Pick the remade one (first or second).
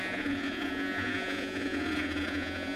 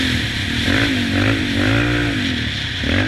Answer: first